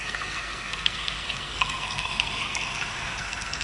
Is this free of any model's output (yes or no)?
no